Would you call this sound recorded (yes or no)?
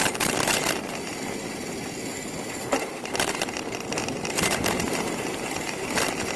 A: yes